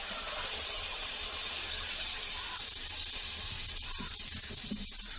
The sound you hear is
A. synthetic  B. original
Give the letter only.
A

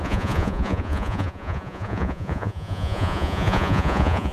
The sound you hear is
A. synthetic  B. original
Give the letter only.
A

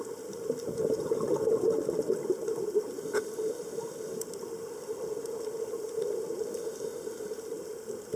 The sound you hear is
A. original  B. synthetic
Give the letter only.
A